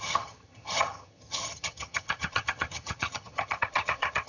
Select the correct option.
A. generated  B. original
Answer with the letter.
A